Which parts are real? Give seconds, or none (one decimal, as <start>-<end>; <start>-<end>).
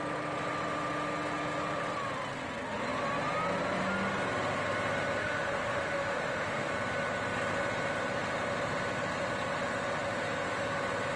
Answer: 0.0-5.2; 6.7-11.2